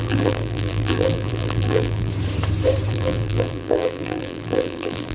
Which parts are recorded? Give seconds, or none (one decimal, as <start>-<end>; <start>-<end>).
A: 2.1-2.9